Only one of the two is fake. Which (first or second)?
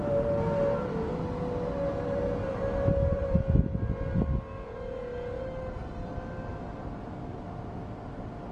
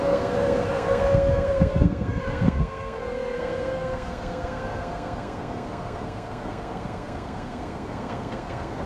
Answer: second